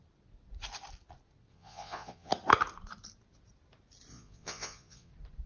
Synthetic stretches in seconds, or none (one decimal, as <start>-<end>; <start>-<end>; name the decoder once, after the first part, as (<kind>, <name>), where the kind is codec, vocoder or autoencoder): 1.5-2.3 (vocoder, Vocos); 4.1-5.1